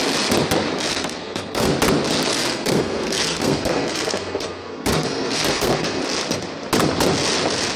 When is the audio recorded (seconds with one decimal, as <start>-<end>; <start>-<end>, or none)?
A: 0.0-0.9; 1.7-2.3; 6.0-7.8